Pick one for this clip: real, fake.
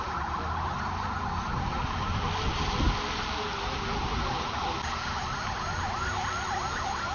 real